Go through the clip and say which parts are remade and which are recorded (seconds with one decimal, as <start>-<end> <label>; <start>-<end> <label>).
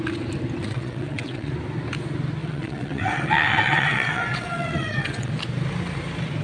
0.0-0.6 recorded; 0.6-1.5 remade; 1.5-2.4 recorded; 2.4-5.3 remade; 5.3-6.4 recorded